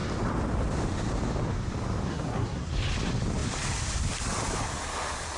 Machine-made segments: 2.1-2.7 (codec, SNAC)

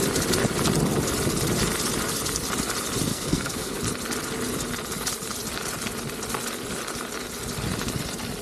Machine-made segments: 3.1-3.8 (codec, SNAC)

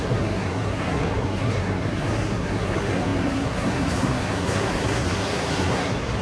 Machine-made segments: 0.0-6.2 (codec, SNAC)

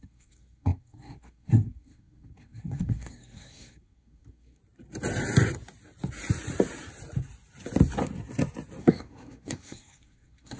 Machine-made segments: 0.0-4.6 (codec, SNAC); 8.8-10.6

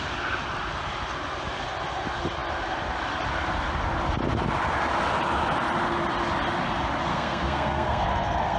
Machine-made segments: 7.1-8.6 (codec, SNAC)

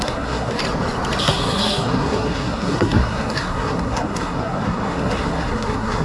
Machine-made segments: 0.0-0.6 (codec, SNAC); 1.2-6.0

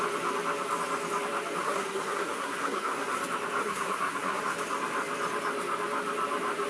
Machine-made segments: 1.6-3.2 (codec, SNAC); 3.6-4.4

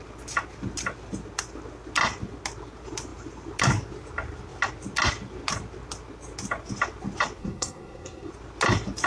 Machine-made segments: 7.4-8.3 (codec, SNAC)